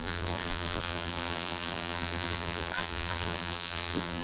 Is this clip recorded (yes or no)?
no